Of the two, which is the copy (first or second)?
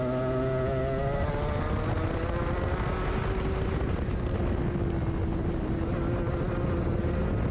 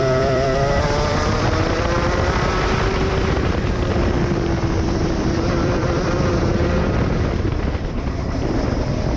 second